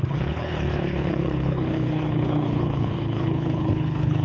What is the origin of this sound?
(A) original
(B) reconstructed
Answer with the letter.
B